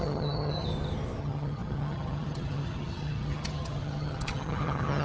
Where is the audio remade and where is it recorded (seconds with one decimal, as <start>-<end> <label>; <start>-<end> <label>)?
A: 0.0-0.7 remade; 0.7-1.2 recorded; 1.2-5.0 remade